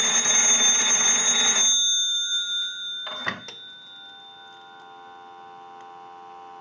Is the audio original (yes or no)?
yes